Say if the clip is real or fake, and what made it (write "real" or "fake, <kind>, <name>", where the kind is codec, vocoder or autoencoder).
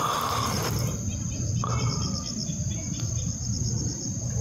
fake, vocoder, BigVGAN v2